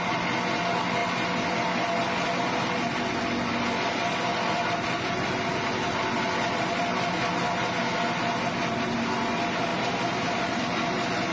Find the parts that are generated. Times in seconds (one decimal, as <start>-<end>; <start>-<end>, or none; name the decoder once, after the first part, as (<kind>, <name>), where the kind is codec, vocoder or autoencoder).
none